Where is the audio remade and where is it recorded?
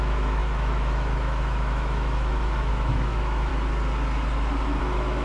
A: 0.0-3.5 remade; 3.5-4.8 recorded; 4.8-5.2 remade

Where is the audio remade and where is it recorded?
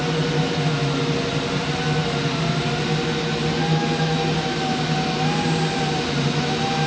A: 0.0-6.9 recorded